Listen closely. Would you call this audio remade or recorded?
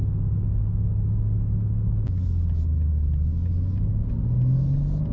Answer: recorded